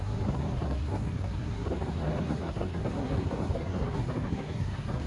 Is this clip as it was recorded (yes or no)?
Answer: no